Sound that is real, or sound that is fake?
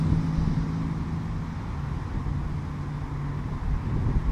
real